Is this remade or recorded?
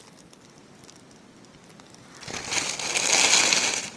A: recorded